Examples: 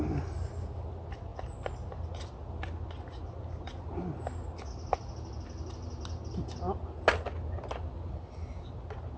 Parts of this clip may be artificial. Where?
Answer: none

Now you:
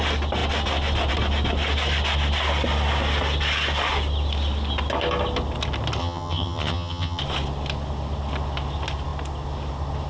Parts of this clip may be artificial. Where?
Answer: 6.0-7.2 (vocoder, HiFi-GAN)

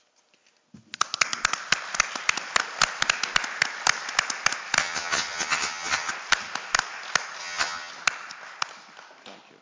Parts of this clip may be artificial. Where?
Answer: 4.8-6.1 (vocoder, HiFi-GAN); 7.4-7.9

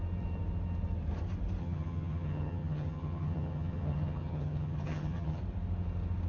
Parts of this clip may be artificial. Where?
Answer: 1.6-5.4 (vocoder, HiFi-GAN)

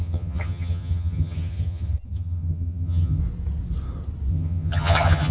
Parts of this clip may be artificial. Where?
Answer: 0.0-3.2 (vocoder, HiFi-GAN); 4.3-5.3

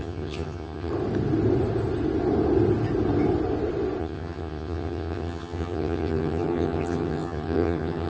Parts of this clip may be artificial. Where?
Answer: 0.0-0.9 (vocoder, HiFi-GAN); 4.0-8.1